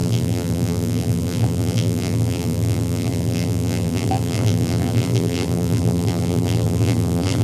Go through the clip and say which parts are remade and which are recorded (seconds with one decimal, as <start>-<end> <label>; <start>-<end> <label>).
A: 0.0-7.4 remade